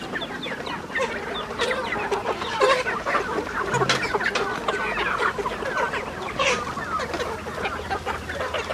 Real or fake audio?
real